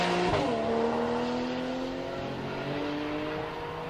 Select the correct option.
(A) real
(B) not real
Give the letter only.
A